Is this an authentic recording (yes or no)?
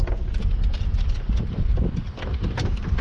yes